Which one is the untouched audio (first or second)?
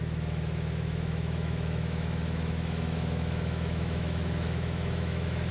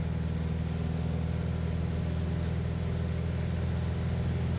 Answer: second